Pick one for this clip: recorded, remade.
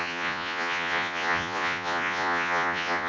remade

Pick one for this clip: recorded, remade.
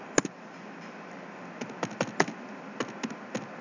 recorded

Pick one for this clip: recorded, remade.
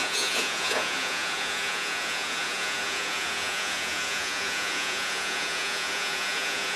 remade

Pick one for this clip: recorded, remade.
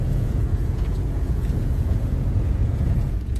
remade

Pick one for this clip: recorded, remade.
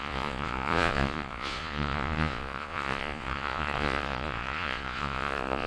remade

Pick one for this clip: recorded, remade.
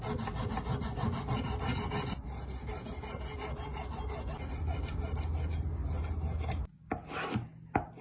recorded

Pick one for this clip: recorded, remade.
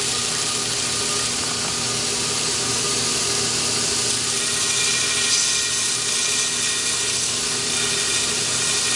recorded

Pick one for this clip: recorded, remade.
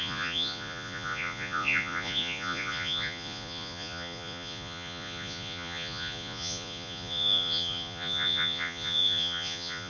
remade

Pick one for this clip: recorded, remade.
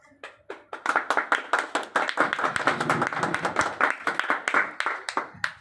recorded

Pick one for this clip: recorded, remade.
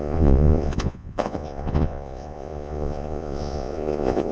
remade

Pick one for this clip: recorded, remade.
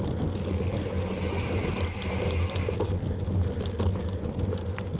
recorded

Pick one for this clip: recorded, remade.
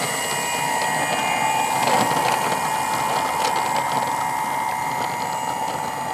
recorded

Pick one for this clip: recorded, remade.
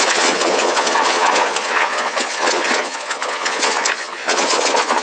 remade